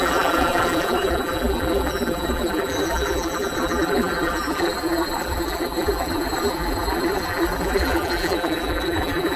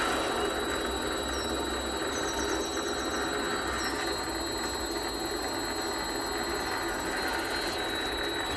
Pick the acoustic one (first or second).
second